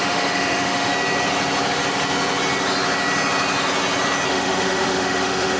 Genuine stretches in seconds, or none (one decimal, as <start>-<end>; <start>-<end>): 0.9-4.3